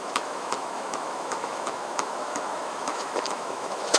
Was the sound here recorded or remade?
remade